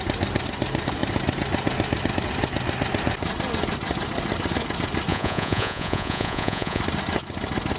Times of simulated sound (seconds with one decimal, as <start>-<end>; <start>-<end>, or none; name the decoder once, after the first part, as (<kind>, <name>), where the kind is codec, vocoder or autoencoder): 5.1-6.8 (vocoder, Vocos)